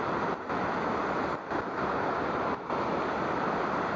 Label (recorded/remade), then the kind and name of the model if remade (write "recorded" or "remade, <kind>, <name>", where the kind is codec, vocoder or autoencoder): remade, vocoder, BigVGAN v2